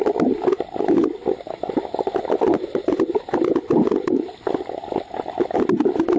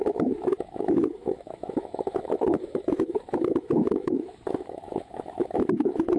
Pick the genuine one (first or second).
first